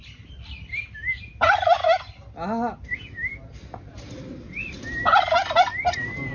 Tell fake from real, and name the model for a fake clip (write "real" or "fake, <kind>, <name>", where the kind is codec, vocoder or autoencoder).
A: real